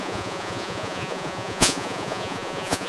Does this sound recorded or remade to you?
remade